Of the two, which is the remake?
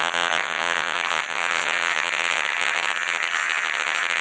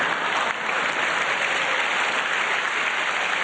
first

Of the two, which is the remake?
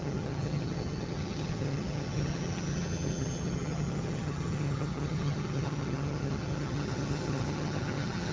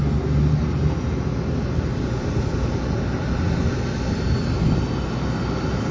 first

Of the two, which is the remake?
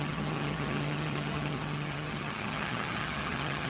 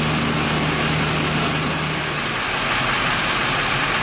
first